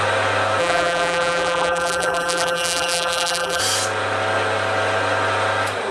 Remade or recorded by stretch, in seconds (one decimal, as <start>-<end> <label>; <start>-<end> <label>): 0.0-0.6 recorded; 0.6-3.6 remade; 3.6-5.9 recorded